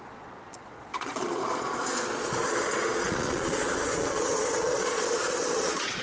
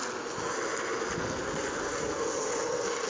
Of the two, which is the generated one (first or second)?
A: first